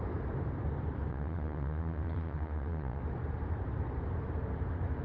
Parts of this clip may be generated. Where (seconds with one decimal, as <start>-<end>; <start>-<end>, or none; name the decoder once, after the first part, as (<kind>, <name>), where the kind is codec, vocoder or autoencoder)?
1.1-3.0 (vocoder, Vocos)